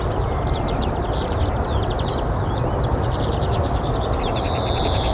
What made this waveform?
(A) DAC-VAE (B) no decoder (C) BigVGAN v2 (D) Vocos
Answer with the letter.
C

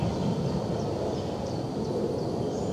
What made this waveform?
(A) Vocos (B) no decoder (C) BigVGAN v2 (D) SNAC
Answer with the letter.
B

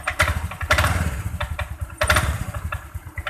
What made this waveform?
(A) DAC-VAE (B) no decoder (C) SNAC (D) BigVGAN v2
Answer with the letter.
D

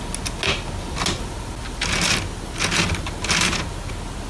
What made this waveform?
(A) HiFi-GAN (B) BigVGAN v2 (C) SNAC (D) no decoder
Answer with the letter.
D